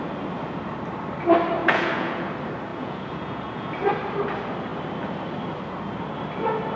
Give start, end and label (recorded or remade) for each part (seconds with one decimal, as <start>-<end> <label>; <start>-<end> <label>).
0.0-1.6 recorded; 1.6-2.3 remade; 2.3-2.7 recorded; 2.7-3.7 remade; 3.7-6.8 recorded